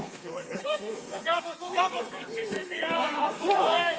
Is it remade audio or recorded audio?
remade